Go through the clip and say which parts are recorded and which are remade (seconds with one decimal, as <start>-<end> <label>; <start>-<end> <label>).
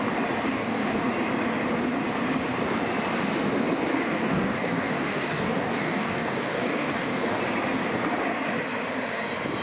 0.0-0.5 recorded; 0.5-1.1 remade; 1.1-3.9 recorded; 3.9-7.4 remade; 7.4-9.6 recorded